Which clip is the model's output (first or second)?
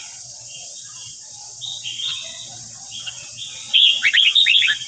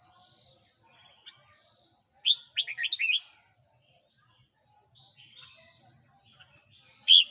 first